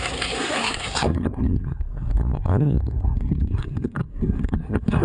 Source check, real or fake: fake